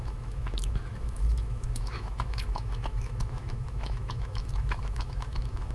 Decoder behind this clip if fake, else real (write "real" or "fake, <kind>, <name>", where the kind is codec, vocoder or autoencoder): fake, autoencoder, DAC-VAE